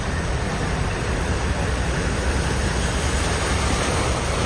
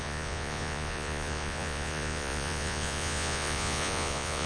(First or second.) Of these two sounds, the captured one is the first